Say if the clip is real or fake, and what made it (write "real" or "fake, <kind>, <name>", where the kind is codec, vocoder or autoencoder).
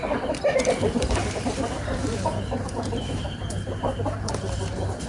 fake, vocoder, BigVGAN v2